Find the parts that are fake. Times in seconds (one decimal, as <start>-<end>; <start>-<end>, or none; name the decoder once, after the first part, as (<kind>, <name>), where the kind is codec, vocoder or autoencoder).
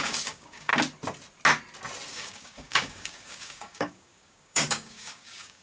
0.0-0.7 (codec, DAC); 2.1-5.6